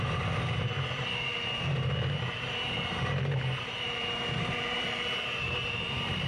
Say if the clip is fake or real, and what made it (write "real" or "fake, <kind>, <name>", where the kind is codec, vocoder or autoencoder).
fake, vocoder, BigVGAN v2